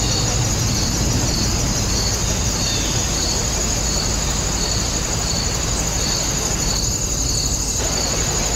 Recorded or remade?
recorded